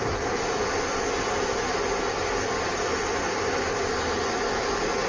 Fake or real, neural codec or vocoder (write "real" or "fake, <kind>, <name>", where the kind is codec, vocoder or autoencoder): real